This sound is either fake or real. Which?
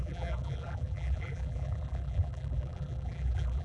fake